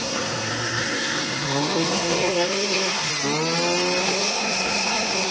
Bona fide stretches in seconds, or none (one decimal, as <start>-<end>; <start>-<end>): 3.1-4.0